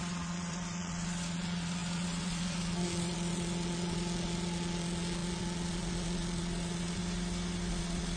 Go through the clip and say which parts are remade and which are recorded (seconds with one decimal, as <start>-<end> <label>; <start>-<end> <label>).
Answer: 0.0-7.0 remade; 7.0-7.7 recorded; 7.7-8.2 remade